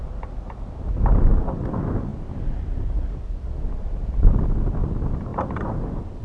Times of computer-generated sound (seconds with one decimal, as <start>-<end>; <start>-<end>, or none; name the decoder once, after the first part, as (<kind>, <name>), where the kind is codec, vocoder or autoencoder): 2.1-4.8 (vocoder, BigVGAN v2); 5.3-6.2